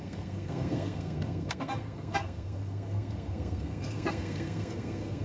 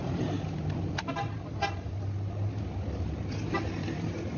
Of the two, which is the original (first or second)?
second